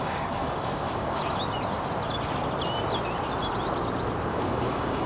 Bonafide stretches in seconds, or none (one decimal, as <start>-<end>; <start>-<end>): 1.2-4.3